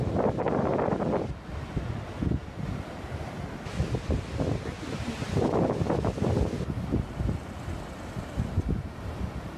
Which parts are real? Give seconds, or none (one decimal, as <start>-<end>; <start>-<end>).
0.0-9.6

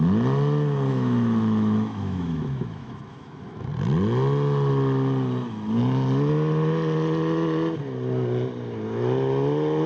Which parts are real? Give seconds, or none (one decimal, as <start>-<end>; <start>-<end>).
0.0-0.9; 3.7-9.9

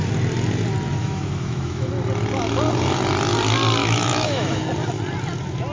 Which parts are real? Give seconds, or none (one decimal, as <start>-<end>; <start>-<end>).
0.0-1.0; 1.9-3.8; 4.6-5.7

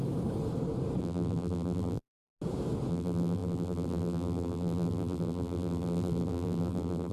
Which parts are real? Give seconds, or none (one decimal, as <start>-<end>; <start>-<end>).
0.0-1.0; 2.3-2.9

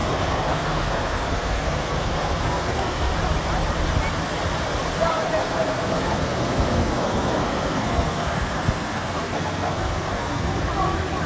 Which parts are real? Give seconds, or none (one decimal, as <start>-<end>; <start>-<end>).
3.1-5.4; 10.6-11.3